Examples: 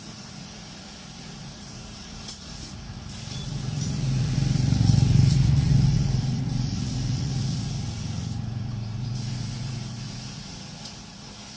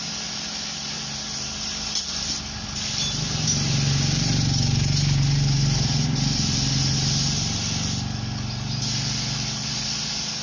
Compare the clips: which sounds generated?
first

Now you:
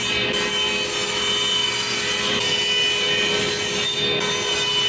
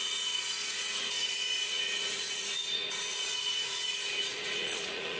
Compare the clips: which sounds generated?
second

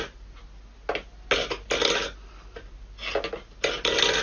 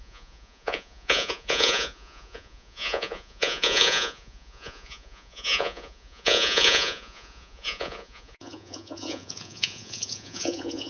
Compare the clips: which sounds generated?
second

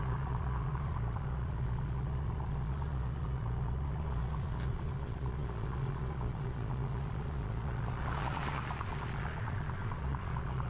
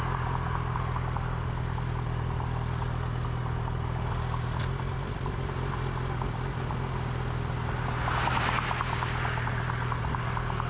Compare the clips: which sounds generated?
first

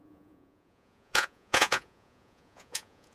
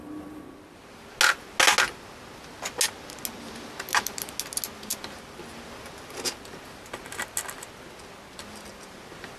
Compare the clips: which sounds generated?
first